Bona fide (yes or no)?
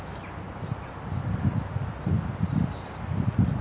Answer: yes